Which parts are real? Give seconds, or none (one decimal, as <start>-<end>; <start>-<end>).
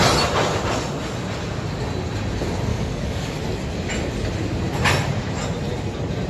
0.0-2.7; 3.4-6.3